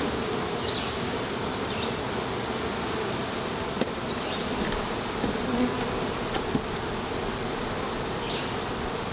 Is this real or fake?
fake